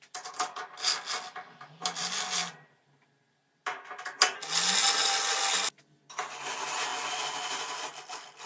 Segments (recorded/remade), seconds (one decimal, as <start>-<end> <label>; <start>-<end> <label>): 0.0-8.5 recorded